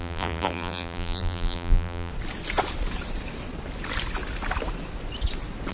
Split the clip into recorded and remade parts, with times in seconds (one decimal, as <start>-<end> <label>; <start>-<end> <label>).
0.0-2.1 remade; 2.1-5.7 recorded